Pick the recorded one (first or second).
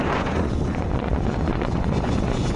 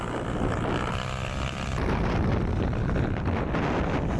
second